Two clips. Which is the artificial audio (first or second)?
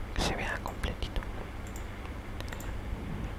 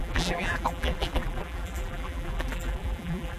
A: second